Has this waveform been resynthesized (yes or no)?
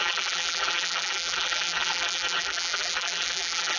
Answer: yes